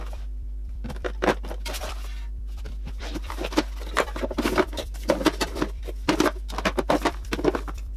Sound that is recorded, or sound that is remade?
remade